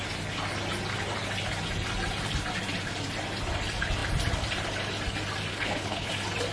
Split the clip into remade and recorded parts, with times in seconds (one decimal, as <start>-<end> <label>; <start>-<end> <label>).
0.0-5.5 recorded; 5.5-6.1 remade; 6.1-6.5 recorded